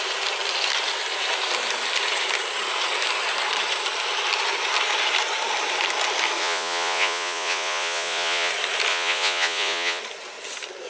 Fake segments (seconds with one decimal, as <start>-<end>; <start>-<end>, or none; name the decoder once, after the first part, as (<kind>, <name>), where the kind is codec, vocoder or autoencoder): 6.4-8.5 (vocoder, Vocos); 8.9-10.0